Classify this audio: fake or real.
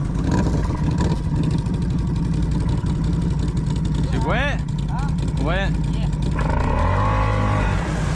real